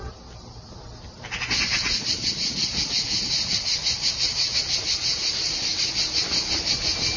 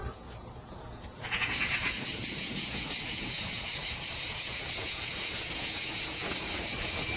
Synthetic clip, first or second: second